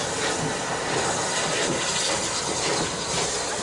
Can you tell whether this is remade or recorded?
recorded